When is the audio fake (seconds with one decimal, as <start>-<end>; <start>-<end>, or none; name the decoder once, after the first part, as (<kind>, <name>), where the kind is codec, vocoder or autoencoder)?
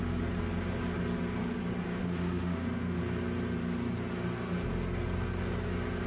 2.0-3.0 (autoencoder, DAC-VAE)